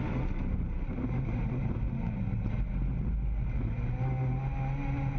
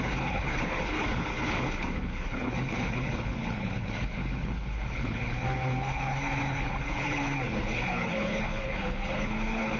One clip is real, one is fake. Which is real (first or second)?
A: first